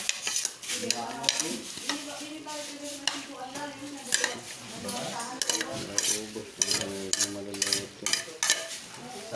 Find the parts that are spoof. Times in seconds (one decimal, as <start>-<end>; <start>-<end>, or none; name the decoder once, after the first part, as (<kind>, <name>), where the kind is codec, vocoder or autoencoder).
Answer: none